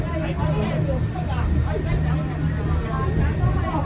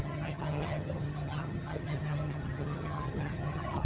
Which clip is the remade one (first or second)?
second